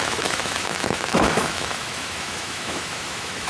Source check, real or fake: fake